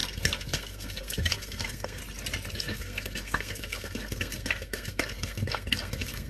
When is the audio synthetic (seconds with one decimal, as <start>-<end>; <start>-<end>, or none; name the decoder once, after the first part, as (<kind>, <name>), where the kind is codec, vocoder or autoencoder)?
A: 0.0-2.0 (codec, SNAC); 2.5-6.3

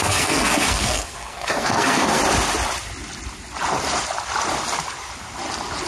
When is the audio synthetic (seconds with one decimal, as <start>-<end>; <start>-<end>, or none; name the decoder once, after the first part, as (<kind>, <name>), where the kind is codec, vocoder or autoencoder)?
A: 0.0-2.2 (codec, SNAC)

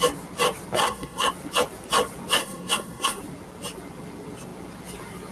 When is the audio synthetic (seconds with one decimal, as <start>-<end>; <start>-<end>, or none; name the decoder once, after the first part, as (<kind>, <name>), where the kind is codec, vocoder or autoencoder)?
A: 0.8-1.3 (codec, SNAC); 2.4-3.2

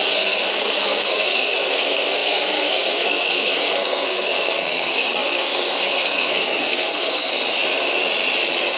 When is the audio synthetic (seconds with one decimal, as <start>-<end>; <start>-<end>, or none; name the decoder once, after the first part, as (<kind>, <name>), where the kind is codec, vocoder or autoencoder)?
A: 0.0-7.3 (codec, SNAC)

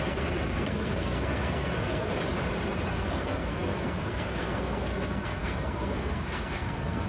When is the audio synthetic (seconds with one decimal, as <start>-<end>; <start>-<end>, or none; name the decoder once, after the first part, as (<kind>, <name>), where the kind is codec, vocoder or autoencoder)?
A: 0.0-2.1 (codec, SNAC); 2.9-7.1

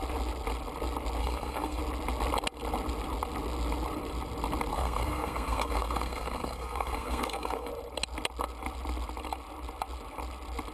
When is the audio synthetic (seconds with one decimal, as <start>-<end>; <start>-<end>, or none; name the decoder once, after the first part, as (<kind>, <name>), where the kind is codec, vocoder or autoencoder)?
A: 1.2-1.8 (codec, SNAC); 4.7-7.7

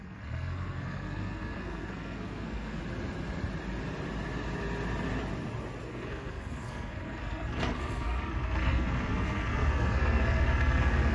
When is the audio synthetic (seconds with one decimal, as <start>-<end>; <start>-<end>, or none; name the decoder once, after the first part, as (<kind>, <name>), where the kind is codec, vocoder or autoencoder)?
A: 0.0-2.8 (codec, SNAC); 5.9-11.1

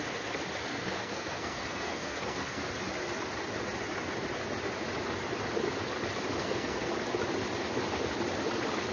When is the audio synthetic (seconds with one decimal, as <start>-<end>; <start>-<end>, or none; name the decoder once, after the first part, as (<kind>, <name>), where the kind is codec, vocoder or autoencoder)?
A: 0.7-2.7 (codec, SNAC); 6.4-6.9